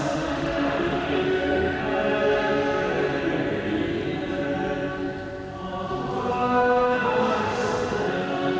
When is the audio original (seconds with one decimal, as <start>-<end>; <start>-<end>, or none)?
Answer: 1.8-6.3